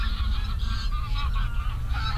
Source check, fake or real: real